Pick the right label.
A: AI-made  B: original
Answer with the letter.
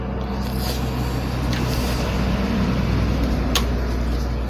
B